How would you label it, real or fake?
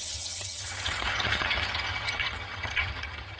fake